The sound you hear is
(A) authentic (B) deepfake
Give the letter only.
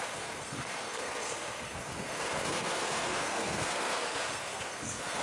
B